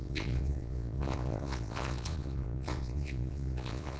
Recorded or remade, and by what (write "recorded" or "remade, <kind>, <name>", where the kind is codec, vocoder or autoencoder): remade, vocoder, Vocos